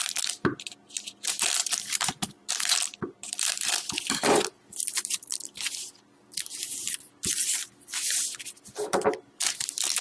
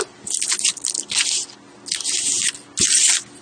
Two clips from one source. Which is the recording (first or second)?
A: second